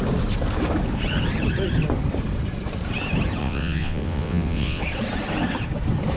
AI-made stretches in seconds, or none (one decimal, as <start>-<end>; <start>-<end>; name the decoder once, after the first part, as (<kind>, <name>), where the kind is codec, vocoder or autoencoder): 3.4-4.8 (vocoder, WaveNeXt)